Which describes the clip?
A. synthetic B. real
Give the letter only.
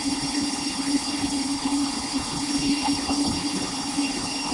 A